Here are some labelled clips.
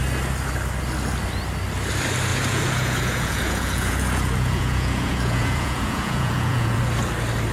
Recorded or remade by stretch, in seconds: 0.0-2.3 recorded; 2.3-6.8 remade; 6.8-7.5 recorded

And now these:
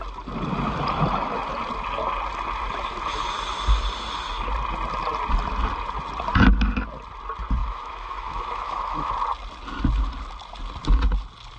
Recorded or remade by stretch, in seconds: 0.0-7.6 recorded; 7.6-9.1 remade; 9.1-11.6 recorded

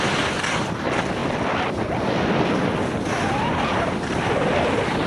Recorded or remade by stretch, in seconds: 0.0-5.1 recorded

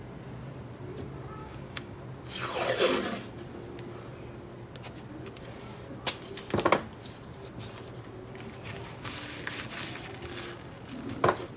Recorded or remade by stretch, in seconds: 0.0-1.4 recorded; 1.4-2.0 remade; 2.0-11.6 recorded

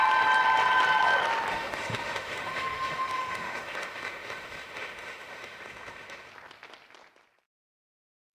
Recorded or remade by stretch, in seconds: 0.0-1.5 recorded; 1.5-6.3 remade; 6.3-8.3 recorded

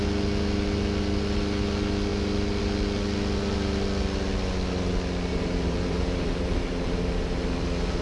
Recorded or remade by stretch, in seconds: 0.0-5.3 recorded; 5.3-7.0 remade; 7.0-8.0 recorded